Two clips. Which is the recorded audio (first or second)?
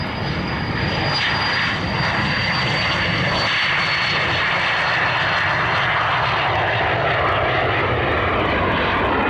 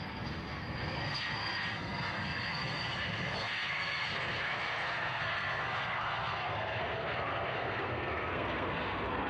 first